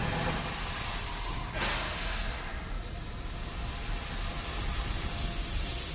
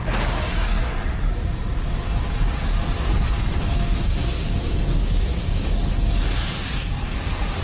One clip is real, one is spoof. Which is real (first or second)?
first